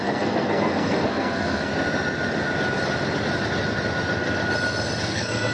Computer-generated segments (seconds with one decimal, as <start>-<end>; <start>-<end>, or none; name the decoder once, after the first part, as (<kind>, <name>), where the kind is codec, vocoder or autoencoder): 0.0-1.7 (codec, SNAC); 5.0-5.5